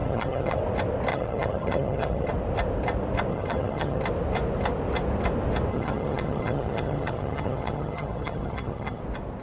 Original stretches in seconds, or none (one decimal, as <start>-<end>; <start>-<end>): 0.6-1.1; 2.3-3.3; 4.0-5.7; 9.0-9.4